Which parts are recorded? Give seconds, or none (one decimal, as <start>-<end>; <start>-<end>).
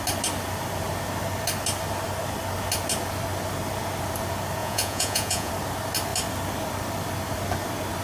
0.0-4.6; 5.5-8.0